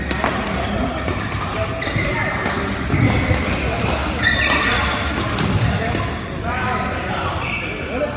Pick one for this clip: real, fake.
real